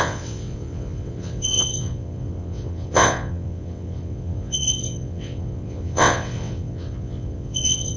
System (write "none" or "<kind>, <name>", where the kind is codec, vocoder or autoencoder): vocoder, WaveNeXt